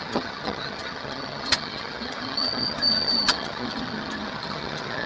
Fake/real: fake